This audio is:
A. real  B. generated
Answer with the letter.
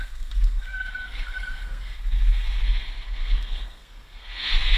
B